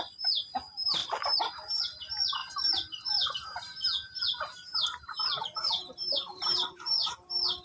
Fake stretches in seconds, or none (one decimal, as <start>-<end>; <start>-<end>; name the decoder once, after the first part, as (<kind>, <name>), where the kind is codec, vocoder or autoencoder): 2.4-4.2 (vocoder, BigVGAN v2); 6.0-7.1